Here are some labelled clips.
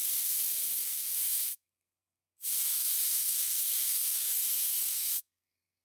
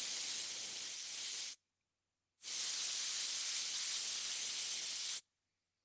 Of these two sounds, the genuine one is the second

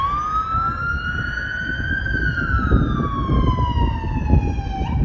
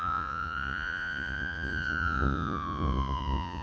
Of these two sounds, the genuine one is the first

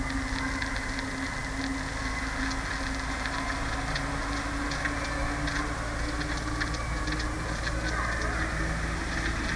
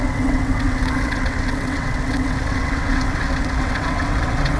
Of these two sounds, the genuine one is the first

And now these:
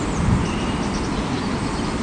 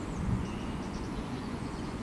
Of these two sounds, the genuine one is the first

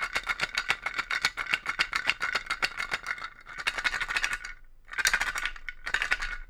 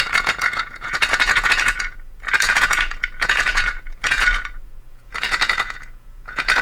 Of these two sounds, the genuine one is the first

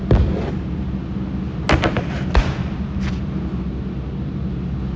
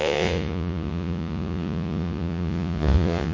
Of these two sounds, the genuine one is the first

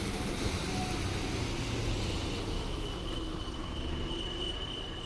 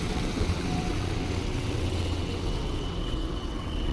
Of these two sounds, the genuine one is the first